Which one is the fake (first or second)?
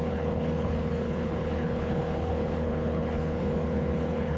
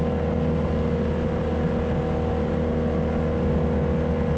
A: first